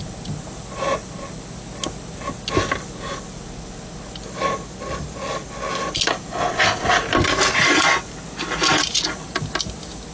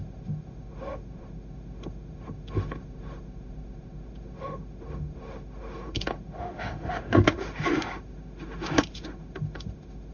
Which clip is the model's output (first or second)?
second